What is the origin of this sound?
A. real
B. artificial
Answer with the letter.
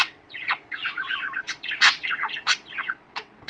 B